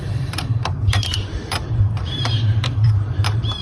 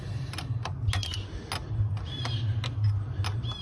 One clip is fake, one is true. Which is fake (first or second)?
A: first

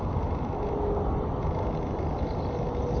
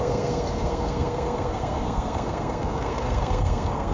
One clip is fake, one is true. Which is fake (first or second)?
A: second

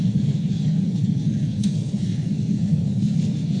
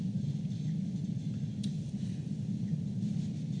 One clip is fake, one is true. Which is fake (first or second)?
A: first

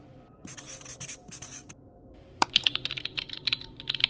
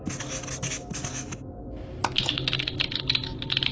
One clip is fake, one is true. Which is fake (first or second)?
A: first